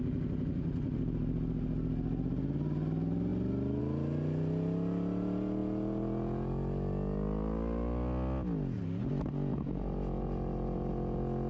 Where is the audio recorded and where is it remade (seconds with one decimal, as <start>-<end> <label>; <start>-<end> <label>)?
0.0-11.5 recorded